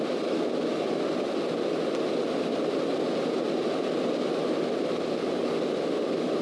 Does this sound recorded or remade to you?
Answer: recorded